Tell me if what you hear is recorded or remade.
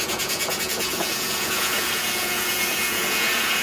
remade